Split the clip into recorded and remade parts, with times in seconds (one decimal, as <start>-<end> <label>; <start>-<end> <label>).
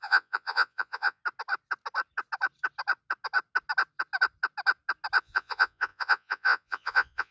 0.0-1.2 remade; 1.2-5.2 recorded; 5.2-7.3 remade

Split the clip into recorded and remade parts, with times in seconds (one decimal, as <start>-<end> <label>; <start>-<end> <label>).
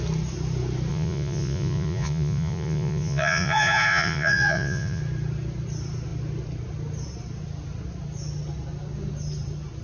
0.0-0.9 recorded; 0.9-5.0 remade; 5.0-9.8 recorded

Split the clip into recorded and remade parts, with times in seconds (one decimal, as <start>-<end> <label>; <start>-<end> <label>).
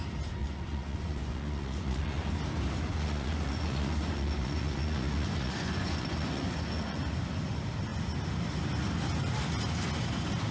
0.0-0.4 recorded; 0.4-2.3 remade; 2.3-2.9 recorded; 2.9-7.0 remade; 7.0-10.5 recorded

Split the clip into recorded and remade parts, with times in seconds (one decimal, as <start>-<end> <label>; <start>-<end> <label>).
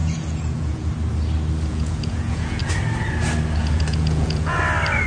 0.0-0.9 remade; 0.9-1.7 recorded; 1.7-2.6 remade; 2.6-3.6 recorded; 3.6-4.6 remade; 4.6-5.1 recorded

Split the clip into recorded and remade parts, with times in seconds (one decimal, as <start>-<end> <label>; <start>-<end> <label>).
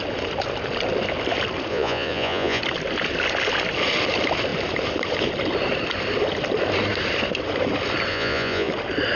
0.0-1.7 recorded; 1.7-2.6 remade; 2.6-8.1 recorded; 8.1-8.7 remade; 8.7-9.2 recorded